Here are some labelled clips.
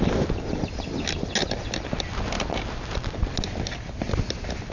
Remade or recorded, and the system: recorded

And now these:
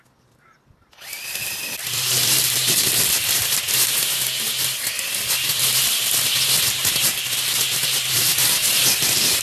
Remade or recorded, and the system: recorded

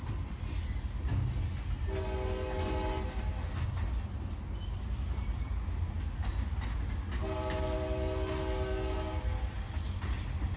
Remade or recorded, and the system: recorded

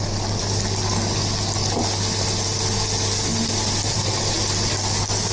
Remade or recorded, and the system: recorded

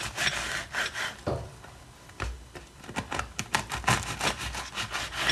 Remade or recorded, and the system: recorded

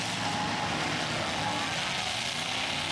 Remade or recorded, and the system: recorded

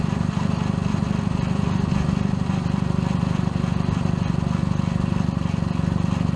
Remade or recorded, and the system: recorded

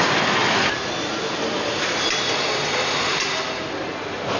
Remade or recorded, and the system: recorded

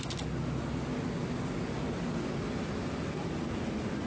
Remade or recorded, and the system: recorded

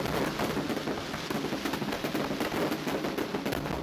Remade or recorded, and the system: recorded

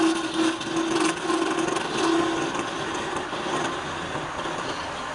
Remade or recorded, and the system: recorded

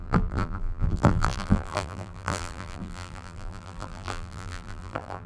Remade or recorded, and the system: remade, vocoder, BigVGAN v2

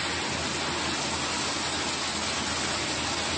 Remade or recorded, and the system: recorded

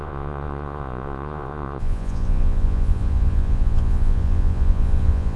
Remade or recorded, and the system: remade, vocoder, Vocos